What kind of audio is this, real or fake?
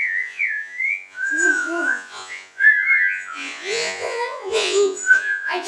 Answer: fake